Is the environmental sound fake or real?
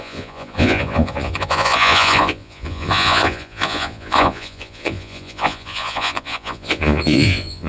fake